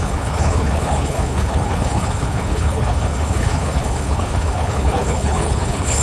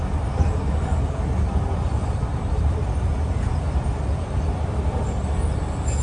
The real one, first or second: second